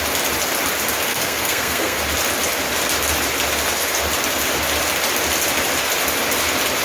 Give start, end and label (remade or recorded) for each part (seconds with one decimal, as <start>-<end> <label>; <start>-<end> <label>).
0.0-1.1 recorded; 1.1-2.0 remade; 2.0-6.8 recorded